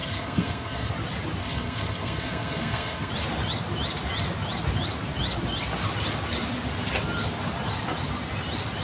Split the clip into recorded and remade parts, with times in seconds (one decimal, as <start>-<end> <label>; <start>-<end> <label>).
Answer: 0.0-0.9 remade; 0.9-1.4 recorded; 1.4-3.1 remade; 3.1-8.8 recorded